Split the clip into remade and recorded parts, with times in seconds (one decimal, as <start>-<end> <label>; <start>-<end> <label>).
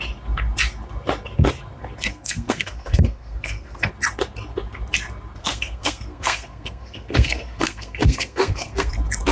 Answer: 0.0-2.1 recorded; 2.1-3.9 remade; 3.9-5.4 recorded; 5.4-8.9 remade; 8.9-9.3 recorded